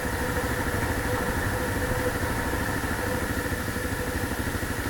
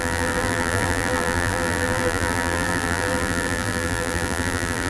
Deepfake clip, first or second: second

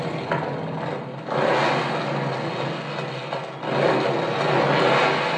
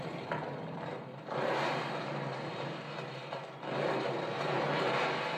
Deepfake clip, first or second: second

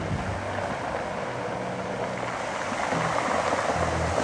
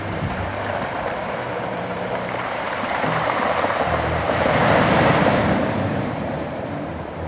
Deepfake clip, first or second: second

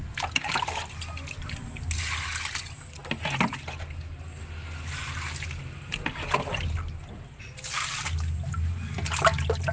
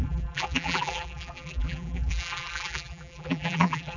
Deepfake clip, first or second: second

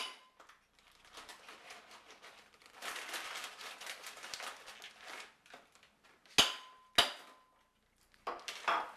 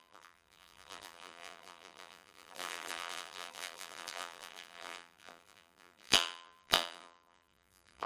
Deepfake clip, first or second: second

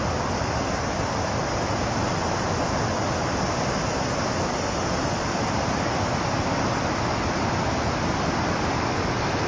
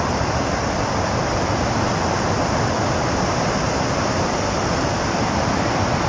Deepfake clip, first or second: second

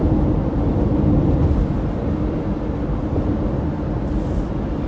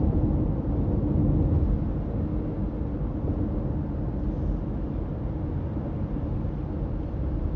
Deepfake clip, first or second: first